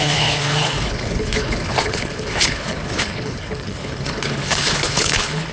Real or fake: fake